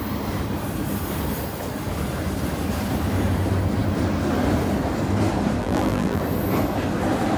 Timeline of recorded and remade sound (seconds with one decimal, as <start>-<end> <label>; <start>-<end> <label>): 0.0-5.6 recorded; 5.6-6.2 remade; 6.2-7.4 recorded